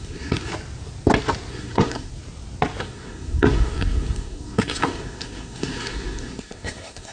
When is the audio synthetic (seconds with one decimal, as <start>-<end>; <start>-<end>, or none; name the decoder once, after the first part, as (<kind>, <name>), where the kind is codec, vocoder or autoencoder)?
0.0-0.5 (codec, SNAC); 1.5-2.1; 2.8-7.1